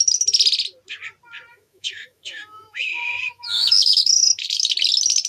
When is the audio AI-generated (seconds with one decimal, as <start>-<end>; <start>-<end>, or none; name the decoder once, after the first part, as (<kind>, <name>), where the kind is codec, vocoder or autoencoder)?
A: 1.5-4.7 (autoencoder, DAC-VAE)